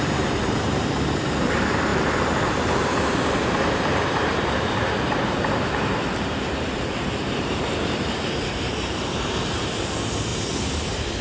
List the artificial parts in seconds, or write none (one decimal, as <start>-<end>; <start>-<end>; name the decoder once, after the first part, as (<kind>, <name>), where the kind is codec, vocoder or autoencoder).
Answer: 0.0-10.3 (vocoder, BigVGAN v2)